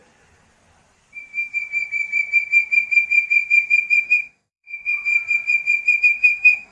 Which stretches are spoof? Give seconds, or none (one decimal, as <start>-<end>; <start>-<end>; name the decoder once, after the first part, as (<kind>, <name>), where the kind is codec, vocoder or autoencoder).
4.0-5.1 (autoencoder, DAC-VAE); 6.0-6.7